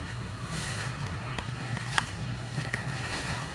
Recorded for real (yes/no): no